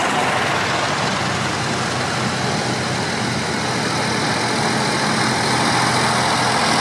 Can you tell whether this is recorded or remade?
recorded